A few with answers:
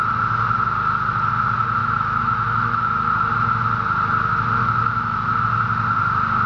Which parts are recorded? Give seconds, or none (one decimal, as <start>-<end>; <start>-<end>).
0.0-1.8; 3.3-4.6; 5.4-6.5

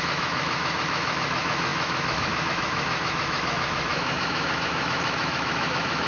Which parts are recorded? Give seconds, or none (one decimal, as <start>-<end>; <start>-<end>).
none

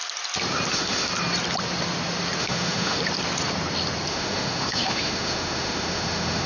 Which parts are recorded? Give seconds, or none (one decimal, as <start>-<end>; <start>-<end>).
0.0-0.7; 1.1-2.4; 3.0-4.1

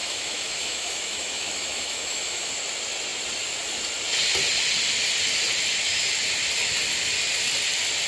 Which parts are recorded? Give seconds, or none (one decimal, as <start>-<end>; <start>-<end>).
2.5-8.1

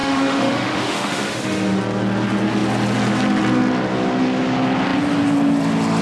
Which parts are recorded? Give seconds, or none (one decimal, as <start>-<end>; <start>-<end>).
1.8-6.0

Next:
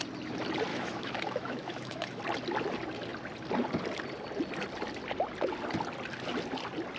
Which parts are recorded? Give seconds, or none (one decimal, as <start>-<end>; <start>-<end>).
0.0-0.7; 2.2-7.0